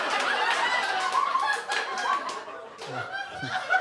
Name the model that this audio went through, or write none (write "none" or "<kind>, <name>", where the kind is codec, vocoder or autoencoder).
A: none